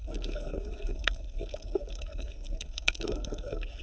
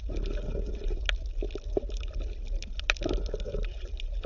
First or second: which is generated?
first